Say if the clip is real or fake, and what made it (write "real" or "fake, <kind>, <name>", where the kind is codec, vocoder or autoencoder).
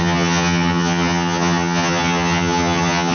fake, vocoder, HiFi-GAN